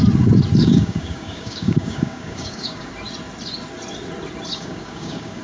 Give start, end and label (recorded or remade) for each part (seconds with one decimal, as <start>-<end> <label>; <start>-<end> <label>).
0.0-0.6 recorded; 0.6-2.9 remade; 2.9-4.5 recorded; 4.5-5.4 remade